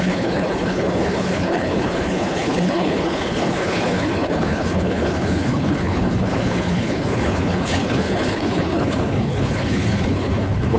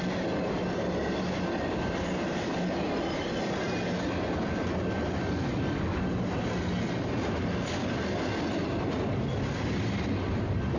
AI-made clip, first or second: first